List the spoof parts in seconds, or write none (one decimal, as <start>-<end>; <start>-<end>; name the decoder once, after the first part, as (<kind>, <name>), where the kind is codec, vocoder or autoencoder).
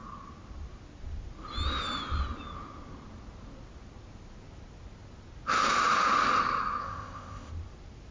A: 6.8-7.5 (codec, ZipCodec)